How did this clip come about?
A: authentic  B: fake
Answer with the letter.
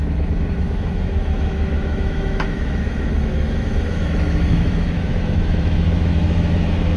B